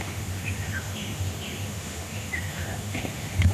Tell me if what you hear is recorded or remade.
remade